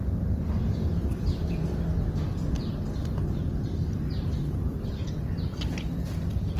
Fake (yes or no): yes